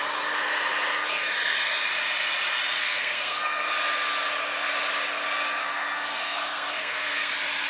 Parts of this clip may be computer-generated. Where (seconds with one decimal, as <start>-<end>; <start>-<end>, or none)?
2.8-3.7; 5.6-7.3